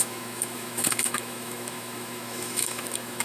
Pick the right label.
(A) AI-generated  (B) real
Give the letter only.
A